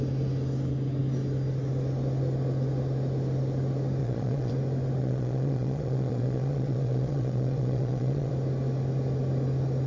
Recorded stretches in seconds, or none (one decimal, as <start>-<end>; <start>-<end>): 0.0-4.0; 4.5-5.0; 8.3-9.9